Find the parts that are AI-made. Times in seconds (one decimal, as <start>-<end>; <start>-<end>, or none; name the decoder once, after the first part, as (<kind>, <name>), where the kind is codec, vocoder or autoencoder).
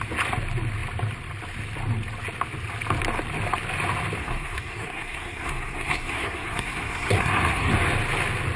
4.2-7.7 (codec, SNAC)